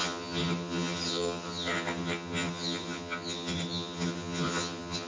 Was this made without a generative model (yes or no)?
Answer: no